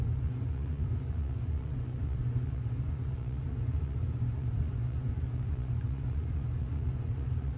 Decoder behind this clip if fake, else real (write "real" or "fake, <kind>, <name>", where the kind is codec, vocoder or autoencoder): fake, vocoder, Vocos